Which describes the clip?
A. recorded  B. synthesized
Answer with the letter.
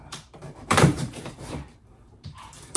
B